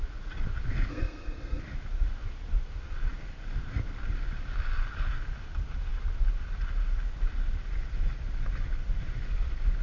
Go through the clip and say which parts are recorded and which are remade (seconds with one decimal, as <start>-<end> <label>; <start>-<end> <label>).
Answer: 0.0-0.9 recorded; 0.9-1.6 remade; 1.6-9.8 recorded